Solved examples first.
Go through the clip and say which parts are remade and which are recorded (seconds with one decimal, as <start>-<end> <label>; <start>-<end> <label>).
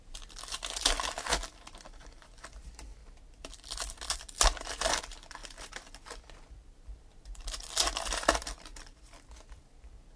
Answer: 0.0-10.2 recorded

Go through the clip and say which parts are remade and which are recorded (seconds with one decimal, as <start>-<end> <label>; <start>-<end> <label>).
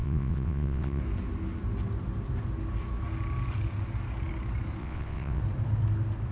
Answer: 0.0-1.0 remade; 1.0-4.8 recorded; 4.8-5.4 remade; 5.4-6.3 recorded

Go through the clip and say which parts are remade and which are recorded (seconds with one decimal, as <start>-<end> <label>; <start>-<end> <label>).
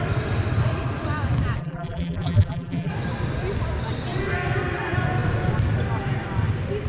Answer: 0.0-1.6 recorded; 1.6-2.9 remade; 2.9-6.9 recorded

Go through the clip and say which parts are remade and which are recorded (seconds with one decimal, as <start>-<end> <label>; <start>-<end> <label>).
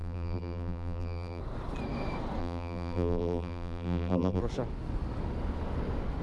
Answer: 0.0-1.4 remade; 1.4-2.4 recorded; 2.4-4.4 remade; 4.4-6.2 recorded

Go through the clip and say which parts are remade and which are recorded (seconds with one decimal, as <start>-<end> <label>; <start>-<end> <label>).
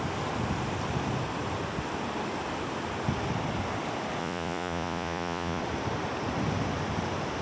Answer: 0.0-4.2 recorded; 4.2-5.6 remade; 5.6-7.4 recorded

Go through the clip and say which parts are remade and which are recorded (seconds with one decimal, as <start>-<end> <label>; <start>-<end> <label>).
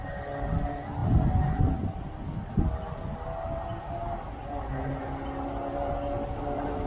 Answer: 0.0-6.9 recorded